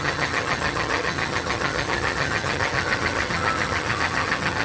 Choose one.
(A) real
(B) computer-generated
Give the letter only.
B